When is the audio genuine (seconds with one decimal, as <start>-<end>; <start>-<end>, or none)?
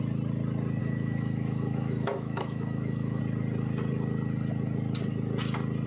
0.0-0.8; 3.2-5.9